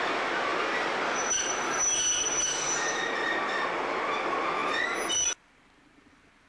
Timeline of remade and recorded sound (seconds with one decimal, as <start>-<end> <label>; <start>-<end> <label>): 0.0-6.5 recorded